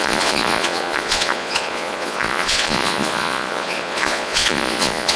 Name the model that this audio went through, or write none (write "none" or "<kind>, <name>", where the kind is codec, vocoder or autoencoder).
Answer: vocoder, Vocos